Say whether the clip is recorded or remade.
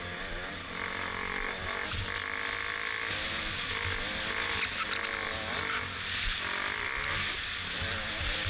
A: recorded